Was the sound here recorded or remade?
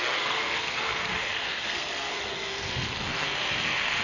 remade